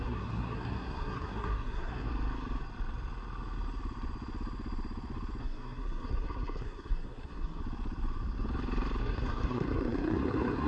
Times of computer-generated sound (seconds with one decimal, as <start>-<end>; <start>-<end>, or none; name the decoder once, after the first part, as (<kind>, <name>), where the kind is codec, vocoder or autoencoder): 0.0-2.1 (codec, SNAC); 5.4-7.6; 9.0-10.7